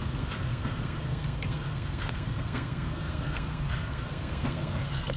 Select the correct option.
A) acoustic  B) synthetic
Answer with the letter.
B